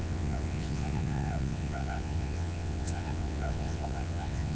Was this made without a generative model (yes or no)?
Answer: no